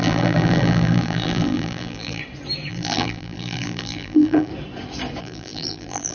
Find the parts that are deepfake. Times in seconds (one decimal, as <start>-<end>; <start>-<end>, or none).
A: 0.0-2.2; 2.7-4.5; 5.2-6.1